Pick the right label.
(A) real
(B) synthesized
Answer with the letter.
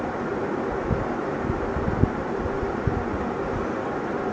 A